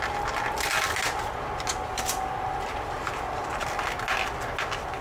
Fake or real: real